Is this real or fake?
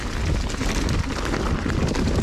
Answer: real